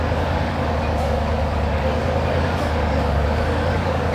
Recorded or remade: remade